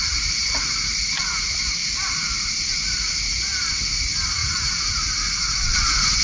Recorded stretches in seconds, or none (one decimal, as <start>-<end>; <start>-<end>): 1.8-2.6